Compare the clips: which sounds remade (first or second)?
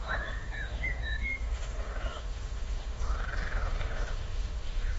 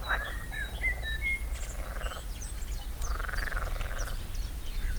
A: first